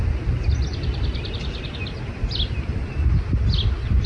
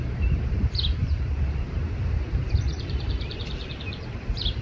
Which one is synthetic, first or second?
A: second